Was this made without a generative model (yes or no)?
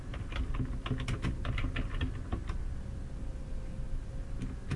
yes